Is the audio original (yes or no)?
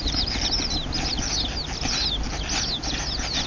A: yes